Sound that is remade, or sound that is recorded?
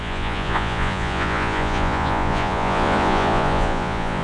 remade